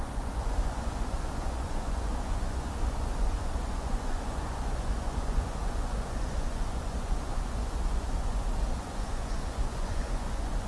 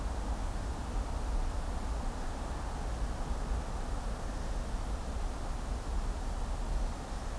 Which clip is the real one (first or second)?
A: second